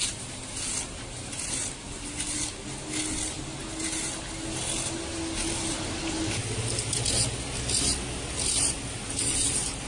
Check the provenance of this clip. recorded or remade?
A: recorded